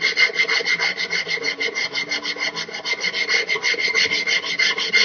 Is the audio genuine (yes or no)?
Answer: yes